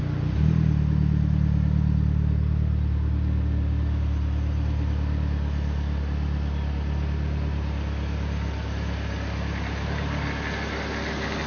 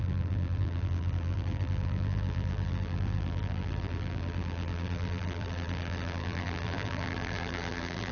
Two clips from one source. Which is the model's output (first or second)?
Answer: second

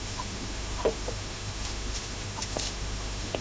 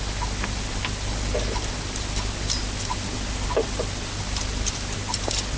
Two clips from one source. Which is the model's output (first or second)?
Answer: first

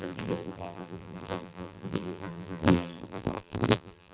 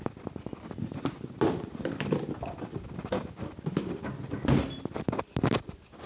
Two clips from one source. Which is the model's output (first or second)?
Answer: first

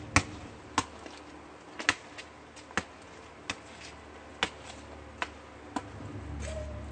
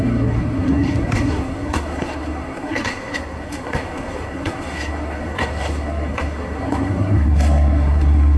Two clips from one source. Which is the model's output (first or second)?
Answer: second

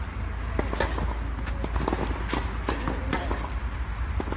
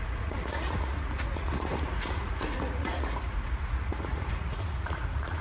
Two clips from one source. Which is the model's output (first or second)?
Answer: second